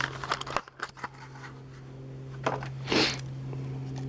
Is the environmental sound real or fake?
real